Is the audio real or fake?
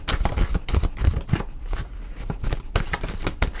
real